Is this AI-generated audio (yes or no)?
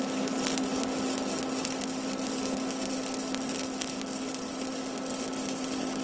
no